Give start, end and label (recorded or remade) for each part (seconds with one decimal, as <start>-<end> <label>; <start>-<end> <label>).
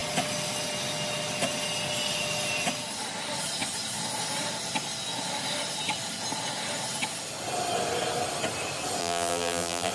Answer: 0.0-9.0 recorded; 9.0-9.9 remade